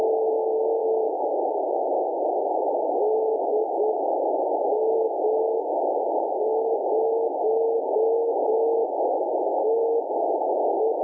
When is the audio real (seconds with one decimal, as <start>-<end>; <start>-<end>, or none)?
0.0-11.0